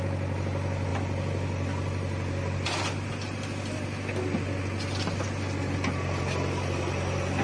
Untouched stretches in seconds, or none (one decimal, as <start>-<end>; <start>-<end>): 0.0-7.4